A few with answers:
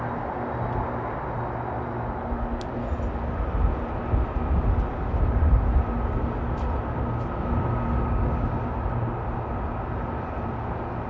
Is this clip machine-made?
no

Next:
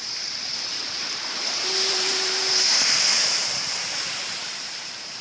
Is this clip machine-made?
yes